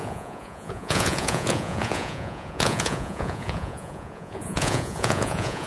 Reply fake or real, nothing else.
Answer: fake